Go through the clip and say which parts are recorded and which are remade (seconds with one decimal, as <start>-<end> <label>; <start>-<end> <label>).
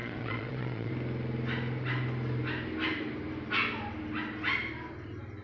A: 0.0-0.9 remade; 0.9-5.4 recorded